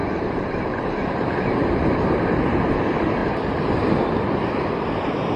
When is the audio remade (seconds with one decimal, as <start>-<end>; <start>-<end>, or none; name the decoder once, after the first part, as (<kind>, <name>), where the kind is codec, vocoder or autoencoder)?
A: 0.0-2.1 (vocoder, BigVGAN v2); 3.2-3.7